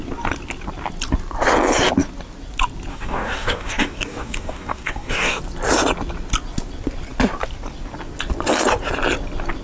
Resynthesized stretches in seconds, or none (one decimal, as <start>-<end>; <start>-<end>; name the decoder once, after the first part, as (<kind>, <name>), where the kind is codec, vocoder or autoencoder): 2.9-5.4 (codec, DAC)